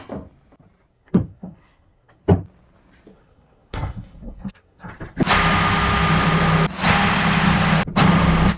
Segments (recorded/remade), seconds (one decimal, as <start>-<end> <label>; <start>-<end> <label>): 0.0-0.9 recorded; 0.9-2.2 remade; 2.2-3.1 recorded; 3.1-4.9 remade; 4.9-8.6 recorded

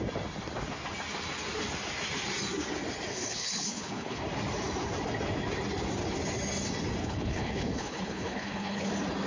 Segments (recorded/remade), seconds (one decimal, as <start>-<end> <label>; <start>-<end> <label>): 0.0-3.1 recorded; 3.1-4.2 remade; 4.2-7.0 recorded; 7.0-8.9 remade; 8.9-9.3 recorded